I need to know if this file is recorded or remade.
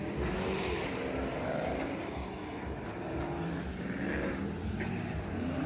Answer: recorded